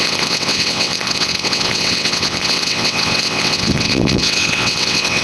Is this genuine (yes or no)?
no